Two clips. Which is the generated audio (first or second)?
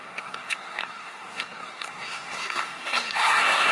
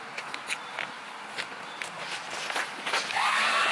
first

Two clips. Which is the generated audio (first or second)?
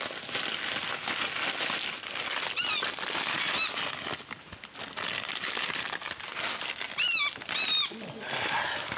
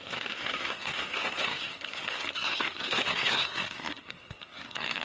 second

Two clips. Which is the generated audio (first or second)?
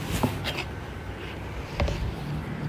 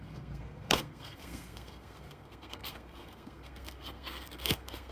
second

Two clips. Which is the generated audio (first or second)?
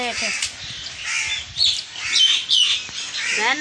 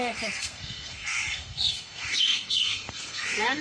second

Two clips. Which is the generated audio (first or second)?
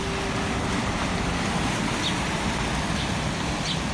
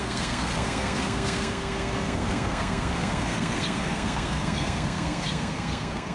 second